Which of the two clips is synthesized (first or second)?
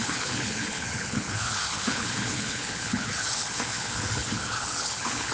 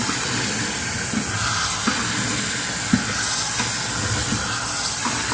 first